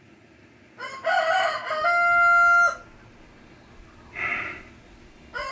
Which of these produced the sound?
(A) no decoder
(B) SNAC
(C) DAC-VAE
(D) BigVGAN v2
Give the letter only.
A